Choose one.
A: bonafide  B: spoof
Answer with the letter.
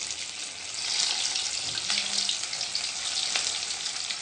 A